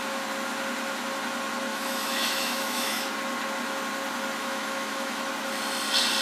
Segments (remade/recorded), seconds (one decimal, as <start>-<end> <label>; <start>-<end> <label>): 0.0-1.7 recorded; 1.7-3.1 remade; 3.1-4.4 recorded; 4.4-5.3 remade; 5.3-6.2 recorded